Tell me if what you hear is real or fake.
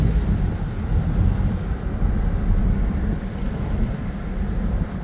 real